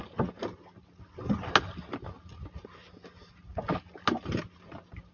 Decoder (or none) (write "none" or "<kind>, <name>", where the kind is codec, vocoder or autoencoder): none